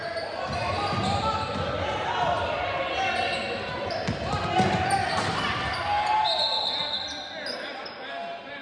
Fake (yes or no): no